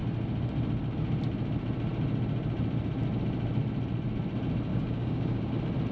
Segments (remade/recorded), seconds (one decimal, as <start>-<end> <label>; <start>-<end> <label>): 0.0-4.7 recorded; 4.7-5.5 remade; 5.5-5.9 recorded